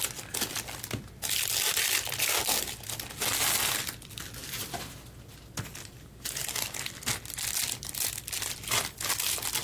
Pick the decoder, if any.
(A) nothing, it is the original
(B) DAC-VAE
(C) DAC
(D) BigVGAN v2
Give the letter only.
A